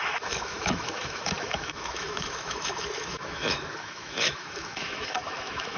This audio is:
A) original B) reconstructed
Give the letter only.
B